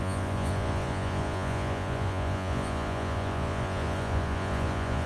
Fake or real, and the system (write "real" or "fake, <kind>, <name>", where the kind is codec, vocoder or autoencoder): fake, vocoder, Vocos